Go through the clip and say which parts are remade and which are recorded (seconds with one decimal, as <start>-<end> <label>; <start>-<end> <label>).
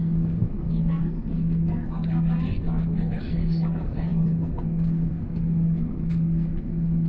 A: 0.0-7.1 remade